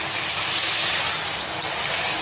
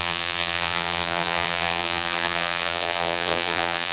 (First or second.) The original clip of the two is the first